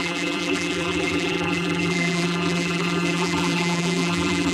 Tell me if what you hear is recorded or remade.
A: remade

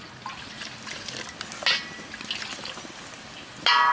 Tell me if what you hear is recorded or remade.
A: recorded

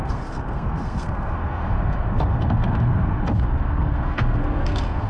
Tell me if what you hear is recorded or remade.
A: remade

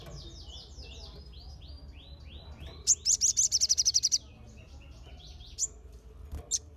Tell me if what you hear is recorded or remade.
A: recorded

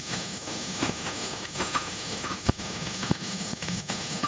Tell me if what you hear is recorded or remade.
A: remade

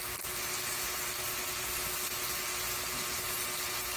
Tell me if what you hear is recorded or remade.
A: recorded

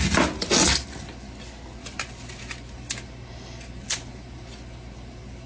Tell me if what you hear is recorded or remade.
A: recorded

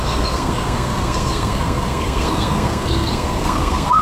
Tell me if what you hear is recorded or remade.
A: remade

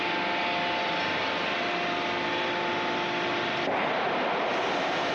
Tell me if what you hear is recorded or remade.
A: recorded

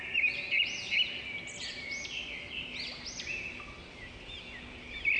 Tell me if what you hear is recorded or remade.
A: recorded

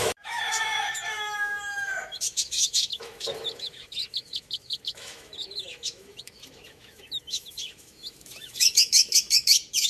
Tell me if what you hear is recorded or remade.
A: remade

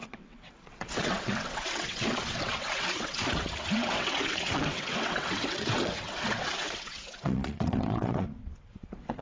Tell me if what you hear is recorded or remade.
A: remade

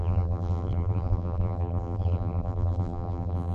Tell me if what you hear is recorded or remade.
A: remade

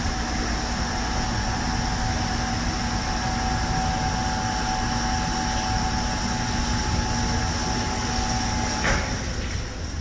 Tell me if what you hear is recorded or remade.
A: recorded